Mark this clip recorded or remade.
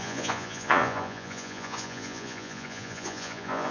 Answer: remade